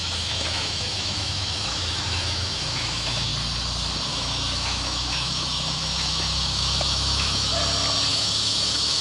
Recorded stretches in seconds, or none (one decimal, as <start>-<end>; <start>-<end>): 3.3-4.1; 7.5-8.1